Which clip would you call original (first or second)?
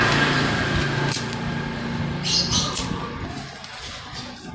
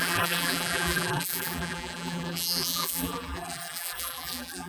first